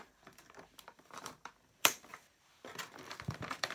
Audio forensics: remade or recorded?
remade